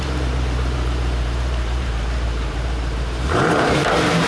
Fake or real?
fake